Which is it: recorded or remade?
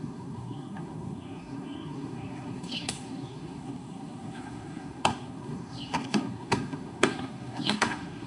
remade